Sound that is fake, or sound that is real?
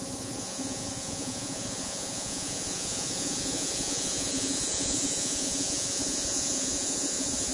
fake